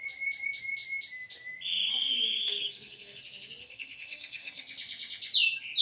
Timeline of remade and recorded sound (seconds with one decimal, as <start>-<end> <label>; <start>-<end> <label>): 0.0-1.9 recorded; 1.9-3.2 remade; 3.2-3.6 recorded; 3.6-4.6 remade; 4.6-5.8 recorded

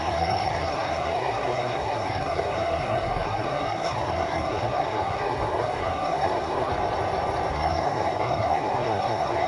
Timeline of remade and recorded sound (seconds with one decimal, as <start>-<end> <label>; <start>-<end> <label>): 0.0-6.7 remade; 6.7-7.5 recorded; 7.5-9.5 remade

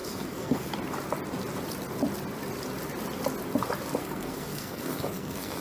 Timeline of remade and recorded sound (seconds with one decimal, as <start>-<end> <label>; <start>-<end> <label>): 0.0-0.7 remade; 0.7-4.0 recorded; 4.0-5.6 remade

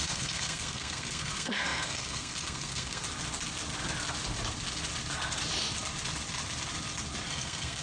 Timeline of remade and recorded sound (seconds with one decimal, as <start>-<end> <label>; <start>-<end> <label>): 0.0-3.0 remade; 3.0-7.3 recorded; 7.3-7.8 remade